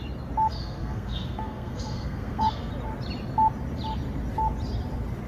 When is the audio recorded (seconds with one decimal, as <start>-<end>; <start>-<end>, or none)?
0.0-0.5; 2.7-5.3